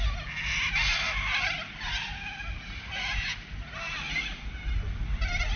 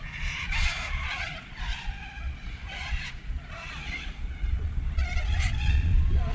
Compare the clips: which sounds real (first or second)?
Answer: first